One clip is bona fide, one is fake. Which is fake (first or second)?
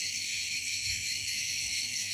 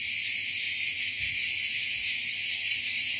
first